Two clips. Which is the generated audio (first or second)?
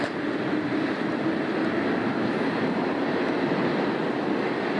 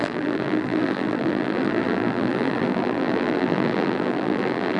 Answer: second